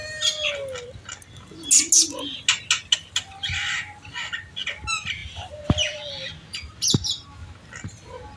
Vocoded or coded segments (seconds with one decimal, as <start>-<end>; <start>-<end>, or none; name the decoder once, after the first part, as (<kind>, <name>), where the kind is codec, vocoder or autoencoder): none